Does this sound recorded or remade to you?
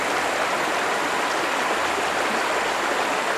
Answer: recorded